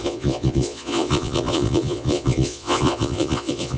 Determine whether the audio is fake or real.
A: fake